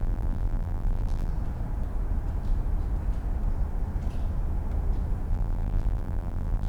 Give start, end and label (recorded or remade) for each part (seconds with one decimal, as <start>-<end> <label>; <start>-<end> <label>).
0.0-1.3 remade; 1.3-5.3 recorded; 5.3-6.7 remade